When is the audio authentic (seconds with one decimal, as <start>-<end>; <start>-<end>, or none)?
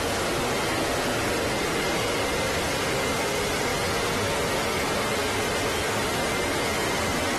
0.0-7.4